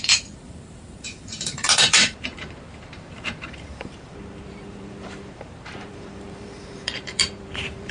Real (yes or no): no